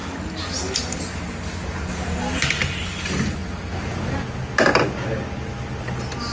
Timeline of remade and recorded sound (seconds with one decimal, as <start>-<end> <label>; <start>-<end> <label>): 0.0-6.3 recorded